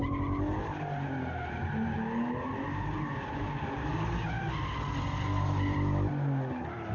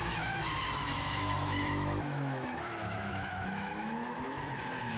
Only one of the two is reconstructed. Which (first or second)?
second